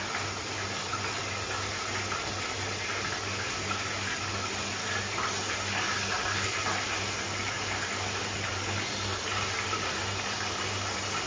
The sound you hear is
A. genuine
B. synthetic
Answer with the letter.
A